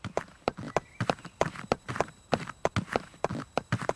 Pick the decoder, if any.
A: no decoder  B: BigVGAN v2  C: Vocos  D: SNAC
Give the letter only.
A